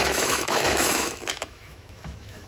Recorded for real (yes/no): no